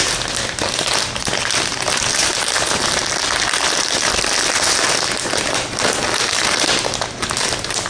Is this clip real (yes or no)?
yes